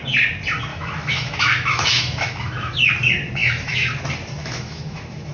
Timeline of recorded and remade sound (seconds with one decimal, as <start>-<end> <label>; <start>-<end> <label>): 0.0-0.7 recorded; 0.7-2.9 remade; 2.9-3.4 recorded; 3.4-4.0 remade; 4.0-4.4 recorded; 4.4-5.3 remade